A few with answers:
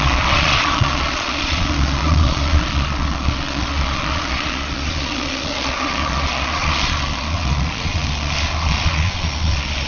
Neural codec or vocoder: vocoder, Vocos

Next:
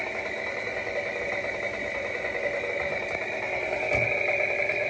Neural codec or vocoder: none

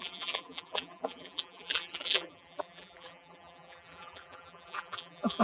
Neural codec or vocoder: vocoder, BigVGAN v2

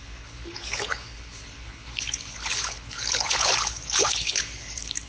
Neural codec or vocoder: codec, HILCodec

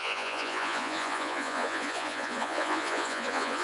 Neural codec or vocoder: vocoder, Vocos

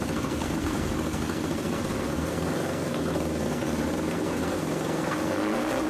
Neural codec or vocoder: codec, SNAC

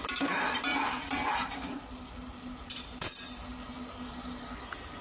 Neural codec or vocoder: none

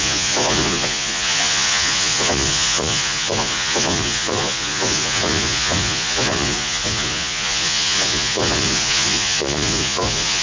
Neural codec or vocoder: vocoder, Vocos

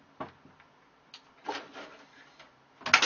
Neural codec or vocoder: none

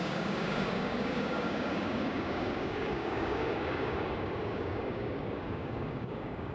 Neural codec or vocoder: codec, DAC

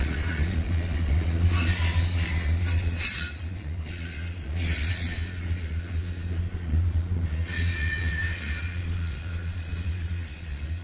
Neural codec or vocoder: vocoder, Vocos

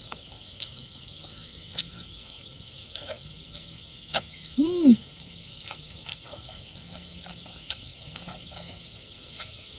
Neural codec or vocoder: codec, SNAC